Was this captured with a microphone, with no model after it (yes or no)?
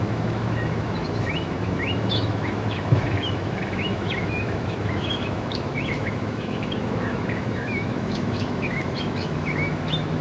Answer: no